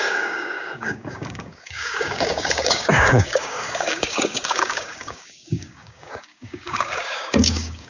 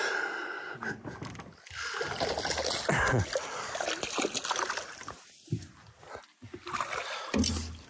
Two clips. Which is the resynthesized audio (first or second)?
first